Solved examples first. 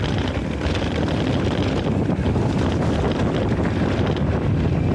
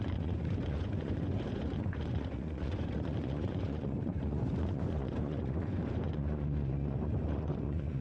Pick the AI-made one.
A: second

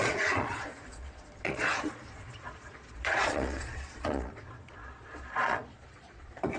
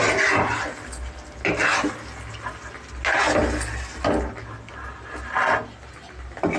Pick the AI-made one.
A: first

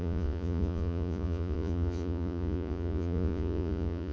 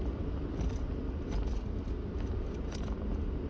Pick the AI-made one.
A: first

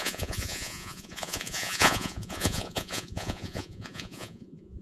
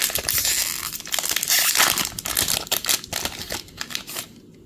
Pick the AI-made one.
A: first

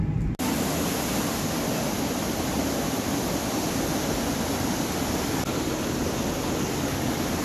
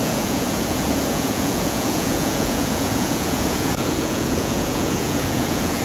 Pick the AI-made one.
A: second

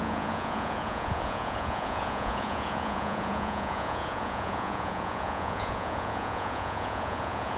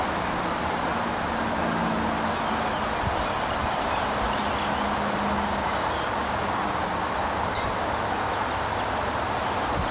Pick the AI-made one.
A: first